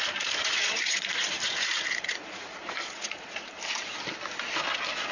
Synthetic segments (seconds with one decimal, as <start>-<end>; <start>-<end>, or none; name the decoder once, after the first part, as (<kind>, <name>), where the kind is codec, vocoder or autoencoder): 0.4-3.5 (vocoder, Vocos)